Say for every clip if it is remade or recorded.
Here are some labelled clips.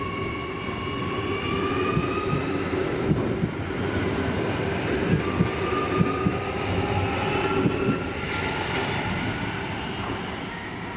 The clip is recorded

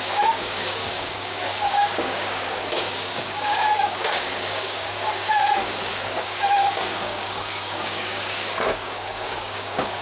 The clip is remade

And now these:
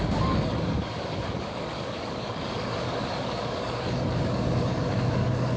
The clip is remade